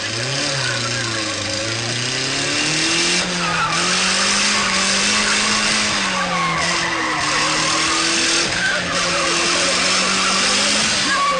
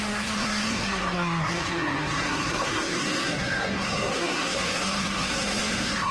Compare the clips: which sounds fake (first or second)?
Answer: second